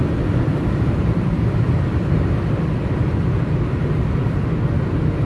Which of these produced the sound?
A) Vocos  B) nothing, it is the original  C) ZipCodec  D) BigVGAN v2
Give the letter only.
D